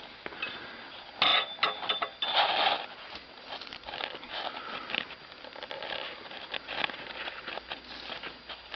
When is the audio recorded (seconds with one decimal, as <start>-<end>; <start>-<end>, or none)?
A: 0.0-8.8